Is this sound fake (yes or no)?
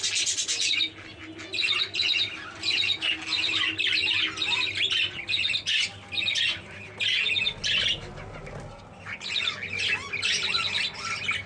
no